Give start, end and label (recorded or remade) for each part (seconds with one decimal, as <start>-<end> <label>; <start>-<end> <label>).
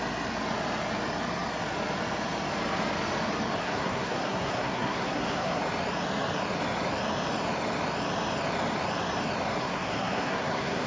0.0-3.6 recorded; 3.6-5.6 remade; 5.6-9.6 recorded; 9.6-10.9 remade